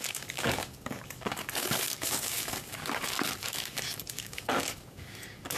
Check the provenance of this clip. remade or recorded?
remade